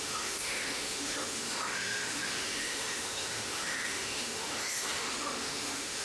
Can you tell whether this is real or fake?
fake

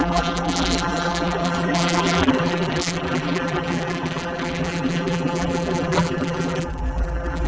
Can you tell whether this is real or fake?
fake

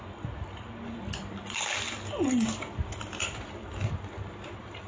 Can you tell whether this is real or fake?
real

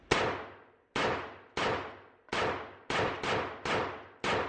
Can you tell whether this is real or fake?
real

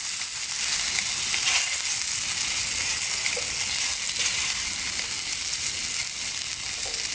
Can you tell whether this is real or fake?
real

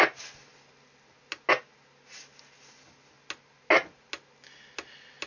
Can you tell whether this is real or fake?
real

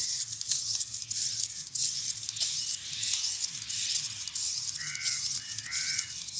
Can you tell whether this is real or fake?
real